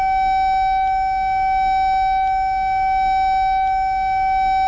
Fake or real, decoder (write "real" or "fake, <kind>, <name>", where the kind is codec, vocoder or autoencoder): real